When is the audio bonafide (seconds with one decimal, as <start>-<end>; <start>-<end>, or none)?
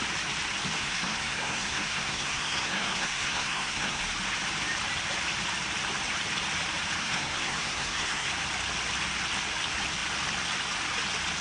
0.0-0.8; 4.0-7.0; 8.3-11.4